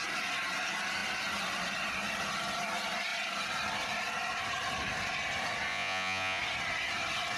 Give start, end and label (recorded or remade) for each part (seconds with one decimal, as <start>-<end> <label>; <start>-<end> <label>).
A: 0.0-5.7 recorded; 5.7-6.4 remade; 6.4-7.4 recorded